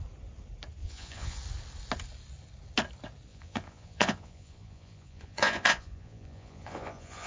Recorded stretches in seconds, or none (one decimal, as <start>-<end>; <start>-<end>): 0.0-0.8; 1.4-3.3

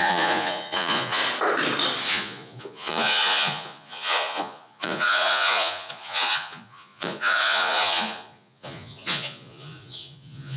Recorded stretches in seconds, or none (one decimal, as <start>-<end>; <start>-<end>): 1.2-2.1